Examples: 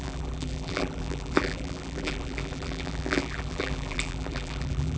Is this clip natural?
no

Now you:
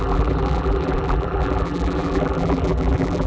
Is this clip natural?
no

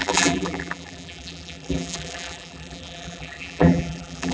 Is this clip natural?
no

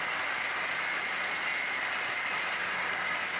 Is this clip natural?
yes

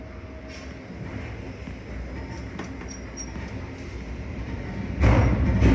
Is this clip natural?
yes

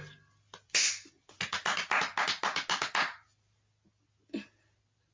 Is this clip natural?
yes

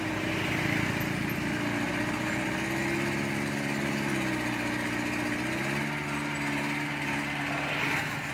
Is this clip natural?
yes